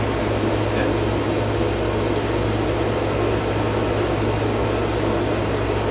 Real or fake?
real